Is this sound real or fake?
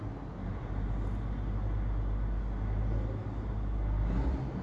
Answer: real